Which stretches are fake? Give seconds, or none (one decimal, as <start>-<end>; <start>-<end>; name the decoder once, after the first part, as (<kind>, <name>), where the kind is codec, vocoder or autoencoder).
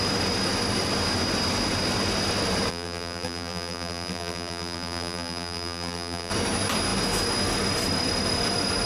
2.7-6.3 (vocoder, BigVGAN v2)